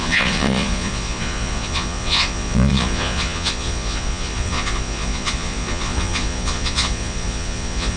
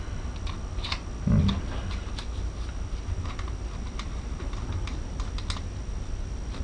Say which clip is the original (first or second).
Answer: second